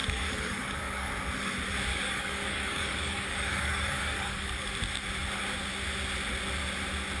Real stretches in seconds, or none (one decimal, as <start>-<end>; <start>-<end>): 1.1-1.9; 4.7-7.2